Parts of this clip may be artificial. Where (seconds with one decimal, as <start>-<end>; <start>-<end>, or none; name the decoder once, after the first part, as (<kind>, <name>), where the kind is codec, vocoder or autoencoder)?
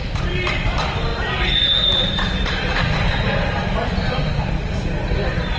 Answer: 0.0-5.6 (vocoder, BigVGAN v2)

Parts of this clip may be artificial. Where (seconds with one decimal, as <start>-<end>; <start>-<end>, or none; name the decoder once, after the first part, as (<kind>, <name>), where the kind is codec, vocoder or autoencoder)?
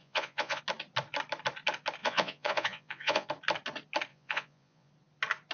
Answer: 0.0-0.6 (vocoder, Vocos); 2.0-3.3; 4.1-4.9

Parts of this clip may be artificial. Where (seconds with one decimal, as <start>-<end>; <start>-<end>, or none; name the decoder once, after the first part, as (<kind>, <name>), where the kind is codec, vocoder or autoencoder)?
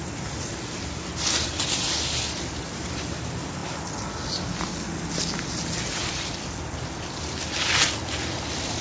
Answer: 0.0-3.6 (vocoder, BigVGAN v2); 5.8-8.8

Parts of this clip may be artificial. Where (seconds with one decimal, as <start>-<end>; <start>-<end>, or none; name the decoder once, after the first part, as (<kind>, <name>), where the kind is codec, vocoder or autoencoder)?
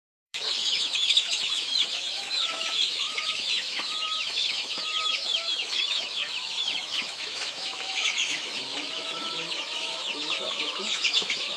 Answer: 0.0-11.6 (autoencoder, DAC-VAE)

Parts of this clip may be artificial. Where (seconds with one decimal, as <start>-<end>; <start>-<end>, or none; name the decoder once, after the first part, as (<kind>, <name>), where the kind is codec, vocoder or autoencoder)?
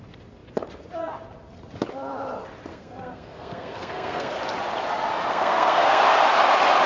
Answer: 2.7-4.4 (codec, SNAC); 5.3-6.0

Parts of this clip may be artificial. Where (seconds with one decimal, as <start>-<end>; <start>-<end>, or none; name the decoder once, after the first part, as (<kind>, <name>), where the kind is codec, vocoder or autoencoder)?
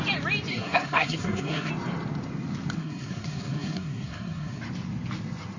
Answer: 0.5-1.7 (codec, SNAC); 2.8-4.6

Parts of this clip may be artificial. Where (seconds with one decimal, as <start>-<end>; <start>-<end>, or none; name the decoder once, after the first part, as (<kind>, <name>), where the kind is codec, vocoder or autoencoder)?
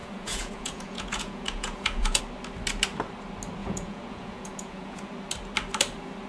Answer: 0.0-2.2 (vocoder, Vocos); 3.6-5.1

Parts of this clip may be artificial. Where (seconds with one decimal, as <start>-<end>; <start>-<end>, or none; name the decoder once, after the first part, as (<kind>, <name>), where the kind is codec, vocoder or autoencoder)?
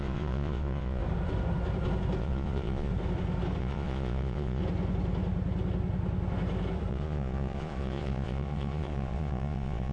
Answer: 0.0-1.0 (vocoder, Vocos); 2.2-2.9; 3.6-4.6; 6.9-9.9